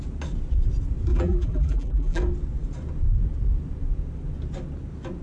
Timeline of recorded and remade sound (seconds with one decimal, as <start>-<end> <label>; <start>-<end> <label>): 0.0-1.1 recorded; 1.1-2.2 remade; 2.2-5.2 recorded